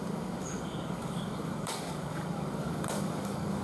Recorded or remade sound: remade